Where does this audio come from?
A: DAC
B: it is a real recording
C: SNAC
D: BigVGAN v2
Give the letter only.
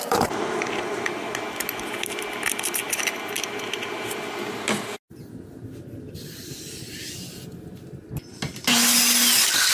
B